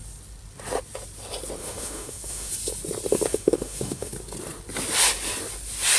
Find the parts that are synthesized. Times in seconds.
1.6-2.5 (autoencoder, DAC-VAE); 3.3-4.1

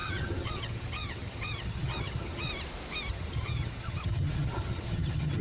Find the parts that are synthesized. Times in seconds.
0.0-2.5 (vocoder, HiFi-GAN); 3.1-5.4

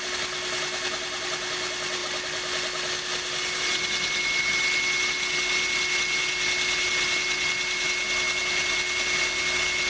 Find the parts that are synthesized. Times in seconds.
none

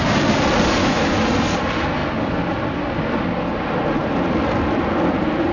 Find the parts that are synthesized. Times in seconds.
0.8-1.3 (autoencoder, DAC-VAE)

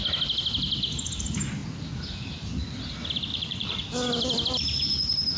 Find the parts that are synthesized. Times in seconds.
3.3-3.8 (vocoder, Vocos)

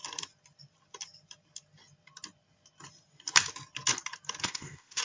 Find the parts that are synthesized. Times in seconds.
4.4-5.0 (codec, ZipCodec)